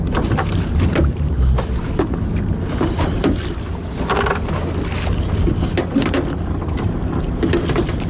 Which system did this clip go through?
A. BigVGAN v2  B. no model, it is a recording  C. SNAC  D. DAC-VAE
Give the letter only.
B